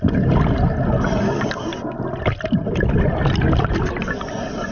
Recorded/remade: recorded